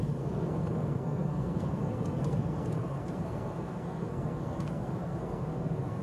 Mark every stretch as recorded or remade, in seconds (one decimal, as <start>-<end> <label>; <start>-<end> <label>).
0.0-6.0 remade

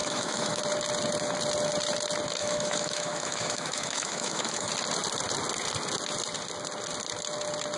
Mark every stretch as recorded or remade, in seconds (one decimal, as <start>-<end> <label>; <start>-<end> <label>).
0.0-0.6 remade; 0.6-2.4 recorded; 2.4-4.7 remade; 4.7-7.8 recorded

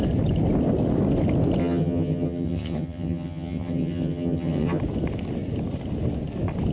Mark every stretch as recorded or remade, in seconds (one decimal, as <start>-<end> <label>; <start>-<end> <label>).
0.0-1.6 recorded; 1.6-4.8 remade; 4.8-6.7 recorded

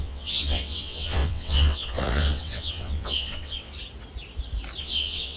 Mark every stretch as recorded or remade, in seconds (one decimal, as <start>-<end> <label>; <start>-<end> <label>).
0.0-3.7 remade; 3.7-4.8 recorded; 4.8-5.4 remade

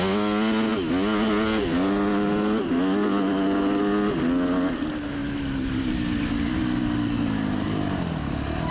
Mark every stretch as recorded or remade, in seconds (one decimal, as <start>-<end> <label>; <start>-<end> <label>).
0.0-8.7 recorded